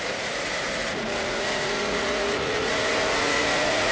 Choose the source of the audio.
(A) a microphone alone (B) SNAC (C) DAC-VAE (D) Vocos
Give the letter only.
D